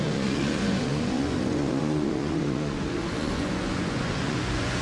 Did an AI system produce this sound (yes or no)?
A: yes